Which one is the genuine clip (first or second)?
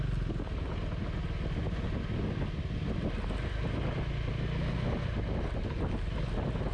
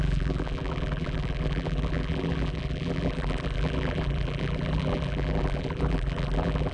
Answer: first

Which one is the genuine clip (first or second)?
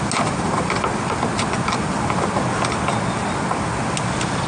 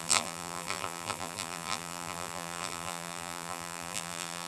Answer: first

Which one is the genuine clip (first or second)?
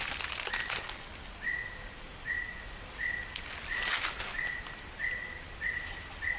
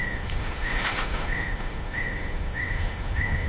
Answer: first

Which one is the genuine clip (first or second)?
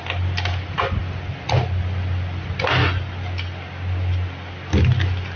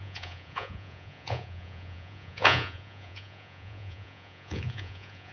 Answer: first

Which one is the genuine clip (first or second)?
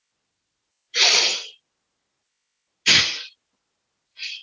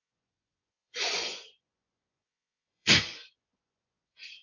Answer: first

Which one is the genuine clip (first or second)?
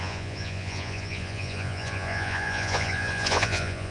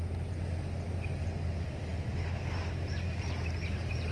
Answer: second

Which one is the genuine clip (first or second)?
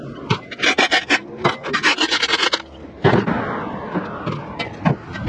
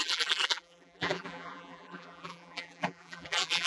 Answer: first